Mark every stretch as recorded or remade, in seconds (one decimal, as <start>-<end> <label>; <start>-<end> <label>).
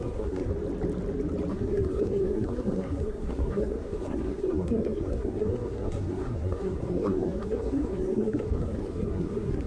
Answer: 0.0-0.5 remade; 0.5-1.5 recorded; 1.5-9.7 remade